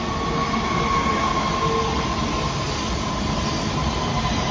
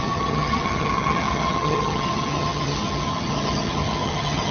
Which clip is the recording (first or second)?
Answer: first